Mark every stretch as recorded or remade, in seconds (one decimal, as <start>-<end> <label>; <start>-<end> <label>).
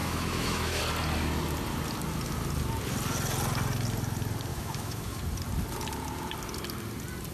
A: 0.0-0.8 remade; 0.8-4.5 recorded; 4.5-5.2 remade; 5.2-7.3 recorded